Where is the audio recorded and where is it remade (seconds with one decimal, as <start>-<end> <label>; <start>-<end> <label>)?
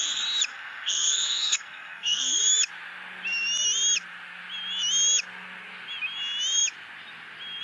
0.0-0.5 recorded; 0.5-2.4 remade; 2.4-7.6 recorded